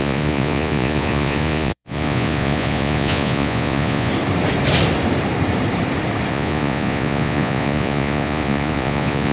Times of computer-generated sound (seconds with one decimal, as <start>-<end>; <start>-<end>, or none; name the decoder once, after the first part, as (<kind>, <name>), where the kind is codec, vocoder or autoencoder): 0.0-4.1 (vocoder, Vocos); 6.3-9.3